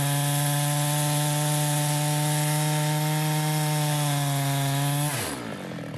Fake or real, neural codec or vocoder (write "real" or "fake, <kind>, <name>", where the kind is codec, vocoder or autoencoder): real